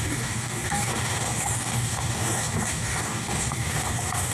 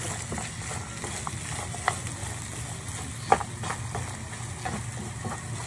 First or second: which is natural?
second